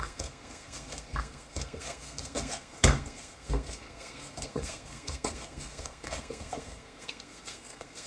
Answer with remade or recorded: remade